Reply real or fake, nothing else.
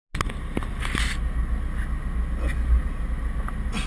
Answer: real